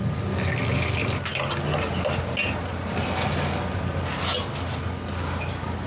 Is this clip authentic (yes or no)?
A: yes